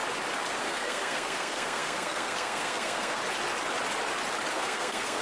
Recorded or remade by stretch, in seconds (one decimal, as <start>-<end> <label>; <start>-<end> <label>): 0.0-0.6 recorded; 0.6-3.2 remade; 3.2-4.5 recorded; 4.5-5.2 remade